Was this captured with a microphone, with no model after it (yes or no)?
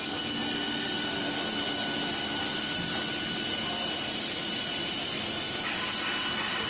yes